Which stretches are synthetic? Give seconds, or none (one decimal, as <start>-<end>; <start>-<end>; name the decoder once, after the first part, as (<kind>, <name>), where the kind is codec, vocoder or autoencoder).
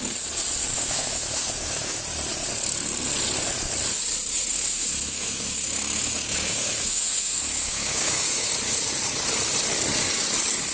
0.7-2.0 (autoencoder, DAC-VAE); 4.5-8.5